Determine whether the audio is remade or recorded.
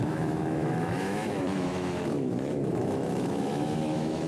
remade